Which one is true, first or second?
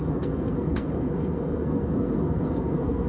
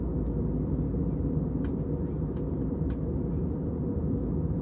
second